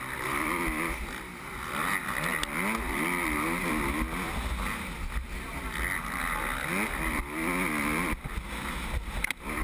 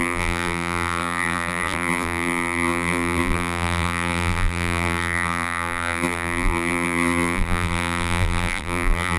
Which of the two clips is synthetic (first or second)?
second